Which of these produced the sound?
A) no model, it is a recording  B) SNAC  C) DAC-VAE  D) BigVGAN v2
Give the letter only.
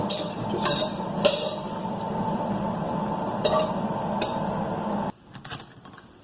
A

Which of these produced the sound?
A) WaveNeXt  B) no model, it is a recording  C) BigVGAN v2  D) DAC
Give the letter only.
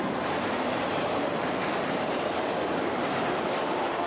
C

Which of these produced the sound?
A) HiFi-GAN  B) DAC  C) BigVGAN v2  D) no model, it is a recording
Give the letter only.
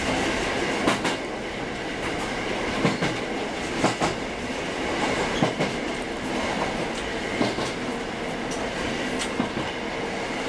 D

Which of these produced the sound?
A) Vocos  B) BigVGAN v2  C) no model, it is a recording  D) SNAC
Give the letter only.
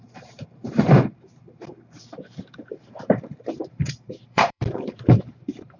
B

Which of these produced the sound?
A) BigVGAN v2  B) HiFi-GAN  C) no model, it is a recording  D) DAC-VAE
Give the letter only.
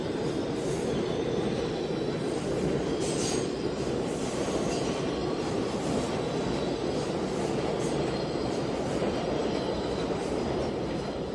A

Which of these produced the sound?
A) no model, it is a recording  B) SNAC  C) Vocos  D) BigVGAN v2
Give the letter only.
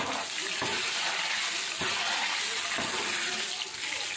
A